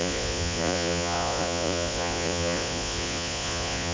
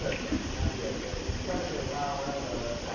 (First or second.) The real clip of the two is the second